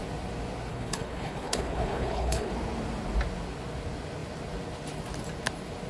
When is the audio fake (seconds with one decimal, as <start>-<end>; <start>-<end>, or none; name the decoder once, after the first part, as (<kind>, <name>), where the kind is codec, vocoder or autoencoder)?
0.7-2.5 (codec, HILCodec)